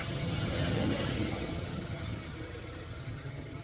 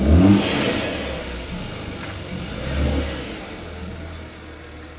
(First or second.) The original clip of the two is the second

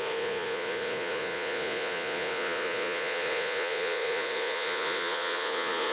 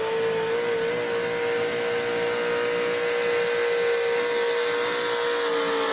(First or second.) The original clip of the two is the second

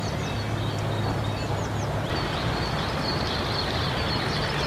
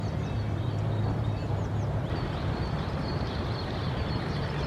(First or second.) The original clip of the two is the first